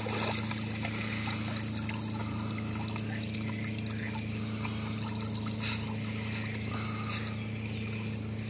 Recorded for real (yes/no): yes